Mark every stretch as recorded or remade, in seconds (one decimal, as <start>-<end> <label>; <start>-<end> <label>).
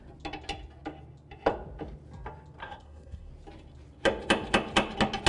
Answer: 0.0-2.6 recorded; 2.6-3.3 remade; 3.3-5.3 recorded